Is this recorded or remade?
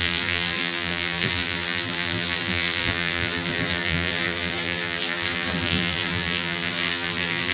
remade